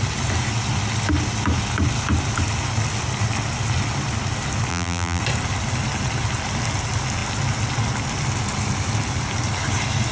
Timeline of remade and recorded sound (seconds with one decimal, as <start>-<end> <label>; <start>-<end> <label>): 0.0-4.7 recorded; 4.7-5.2 remade; 5.2-10.1 recorded